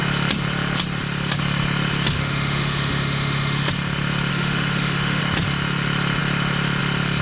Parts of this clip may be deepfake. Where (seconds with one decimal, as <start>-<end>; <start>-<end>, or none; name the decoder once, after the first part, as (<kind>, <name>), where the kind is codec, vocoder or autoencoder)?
2.2-3.7 (autoencoder, DAC-VAE); 4.3-5.2